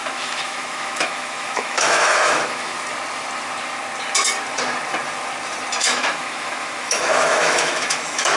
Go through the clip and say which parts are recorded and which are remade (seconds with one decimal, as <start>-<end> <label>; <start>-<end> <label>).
0.0-2.7 remade; 2.7-5.8 recorded; 5.8-8.4 remade